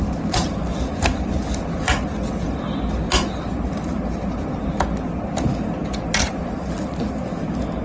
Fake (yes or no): no